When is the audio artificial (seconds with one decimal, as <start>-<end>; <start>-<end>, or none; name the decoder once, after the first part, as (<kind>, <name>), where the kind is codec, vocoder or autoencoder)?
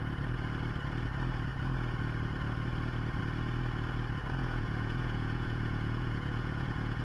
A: 4.4-7.0 (vocoder, Vocos)